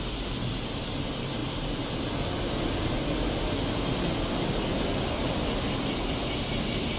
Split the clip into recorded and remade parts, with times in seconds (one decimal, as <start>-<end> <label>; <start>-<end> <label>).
0.0-7.0 recorded